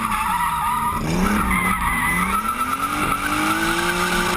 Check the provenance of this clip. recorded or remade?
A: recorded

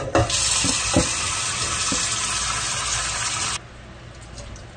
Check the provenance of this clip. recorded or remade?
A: recorded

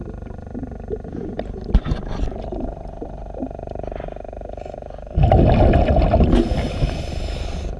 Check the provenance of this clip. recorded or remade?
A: recorded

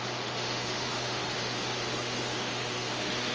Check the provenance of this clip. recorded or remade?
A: remade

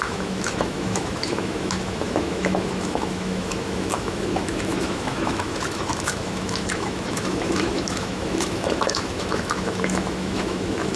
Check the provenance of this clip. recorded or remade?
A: remade